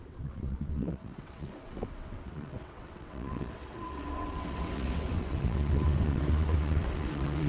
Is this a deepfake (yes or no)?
yes